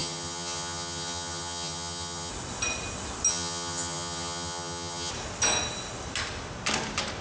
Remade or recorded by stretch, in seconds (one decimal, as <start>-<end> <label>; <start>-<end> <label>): 0.0-2.3 remade; 2.3-3.3 recorded; 3.3-5.1 remade; 5.1-7.2 recorded